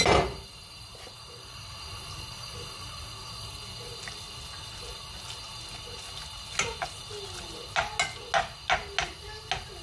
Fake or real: real